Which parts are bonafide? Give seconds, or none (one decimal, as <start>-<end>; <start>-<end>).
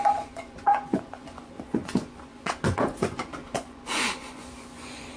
none